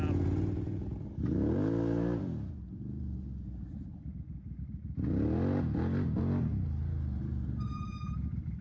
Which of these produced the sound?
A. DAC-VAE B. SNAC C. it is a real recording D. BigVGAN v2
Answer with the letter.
C